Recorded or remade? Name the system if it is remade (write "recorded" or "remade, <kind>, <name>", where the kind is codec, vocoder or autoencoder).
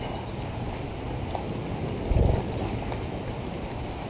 recorded